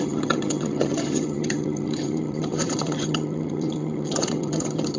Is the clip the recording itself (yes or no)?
no